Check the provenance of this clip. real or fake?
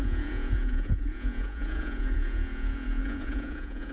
fake